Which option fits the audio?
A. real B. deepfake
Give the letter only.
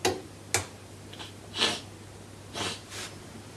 A